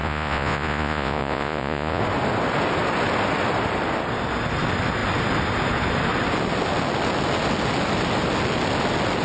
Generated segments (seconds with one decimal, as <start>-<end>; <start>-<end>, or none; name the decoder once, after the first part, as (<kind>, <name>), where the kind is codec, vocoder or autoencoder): 0.0-2.0 (vocoder, Vocos)

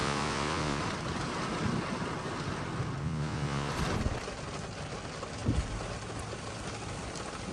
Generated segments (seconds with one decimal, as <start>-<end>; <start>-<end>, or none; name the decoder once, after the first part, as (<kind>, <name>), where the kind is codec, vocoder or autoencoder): 0.0-0.8 (vocoder, Vocos); 3.0-3.7

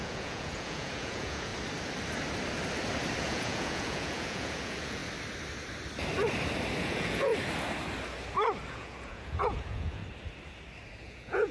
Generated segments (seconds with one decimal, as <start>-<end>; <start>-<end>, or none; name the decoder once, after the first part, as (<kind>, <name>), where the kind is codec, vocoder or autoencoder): 0.0-1.5 (vocoder, Vocos); 3.2-5.0; 6.8-7.3; 8.7-10.0; 11.0-11.5

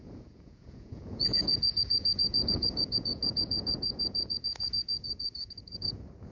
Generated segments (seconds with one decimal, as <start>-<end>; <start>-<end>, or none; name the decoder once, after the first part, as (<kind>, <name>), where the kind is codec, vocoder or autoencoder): 0.0-6.3 (vocoder, Vocos)

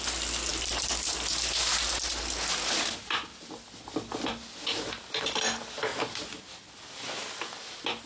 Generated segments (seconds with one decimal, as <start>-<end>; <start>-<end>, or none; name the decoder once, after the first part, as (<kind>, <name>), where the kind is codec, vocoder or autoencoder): none

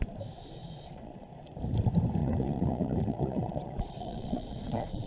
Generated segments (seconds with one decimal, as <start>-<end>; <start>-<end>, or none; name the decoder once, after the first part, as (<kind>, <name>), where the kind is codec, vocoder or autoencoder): 0.6-1.4 (vocoder, Vocos); 2.2-5.1